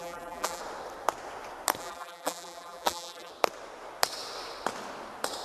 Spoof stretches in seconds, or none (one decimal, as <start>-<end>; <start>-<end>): 0.0-0.6; 1.8-3.3